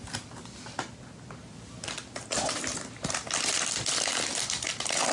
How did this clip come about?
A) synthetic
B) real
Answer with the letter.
B